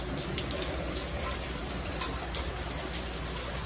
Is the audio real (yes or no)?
no